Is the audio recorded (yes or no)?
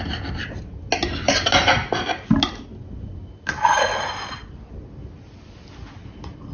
yes